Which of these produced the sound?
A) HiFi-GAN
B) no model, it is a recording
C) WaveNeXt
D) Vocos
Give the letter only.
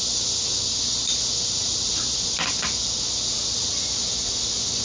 B